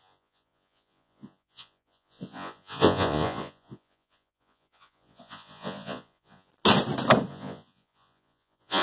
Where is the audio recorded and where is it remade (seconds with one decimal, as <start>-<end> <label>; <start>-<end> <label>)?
0.0-6.5 remade; 6.5-7.3 recorded; 7.3-8.8 remade